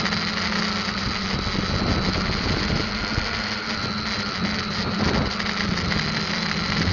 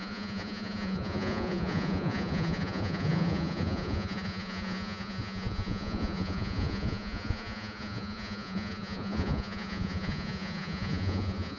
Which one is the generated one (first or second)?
second